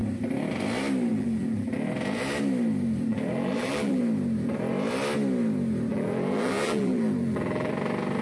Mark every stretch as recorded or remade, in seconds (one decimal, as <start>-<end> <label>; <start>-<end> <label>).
0.0-1.1 recorded; 1.1-1.7 remade; 1.7-3.1 recorded; 3.1-4.0 remade; 4.0-5.9 recorded; 5.9-7.7 remade; 7.7-8.2 recorded